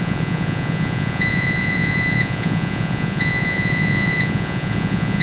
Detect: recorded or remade remade